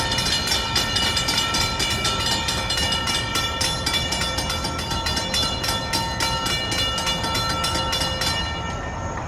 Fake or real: real